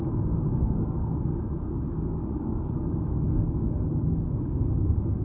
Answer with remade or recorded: remade